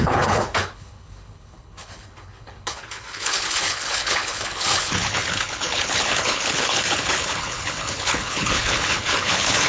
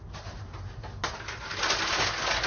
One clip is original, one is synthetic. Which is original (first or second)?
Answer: second